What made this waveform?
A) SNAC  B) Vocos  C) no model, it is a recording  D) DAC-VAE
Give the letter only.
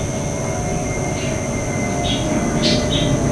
C